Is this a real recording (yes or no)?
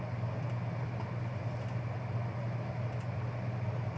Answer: yes